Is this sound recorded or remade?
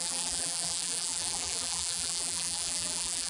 remade